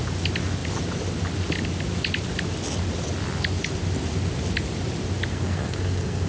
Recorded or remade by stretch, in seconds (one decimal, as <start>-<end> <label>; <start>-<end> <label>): 0.0-5.3 recorded; 5.3-6.3 remade